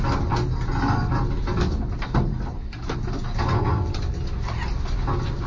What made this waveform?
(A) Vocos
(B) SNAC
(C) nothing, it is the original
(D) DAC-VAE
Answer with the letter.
C